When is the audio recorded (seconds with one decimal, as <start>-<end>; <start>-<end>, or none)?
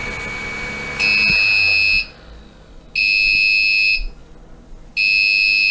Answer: 0.0-5.7